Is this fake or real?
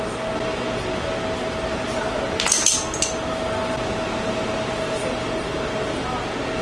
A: real